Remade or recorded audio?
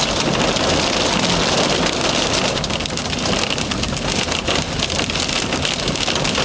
recorded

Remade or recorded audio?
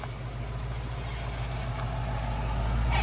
recorded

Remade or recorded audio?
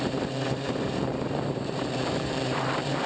remade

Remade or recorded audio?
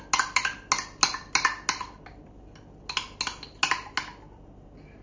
recorded